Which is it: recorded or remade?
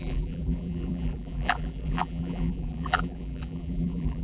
remade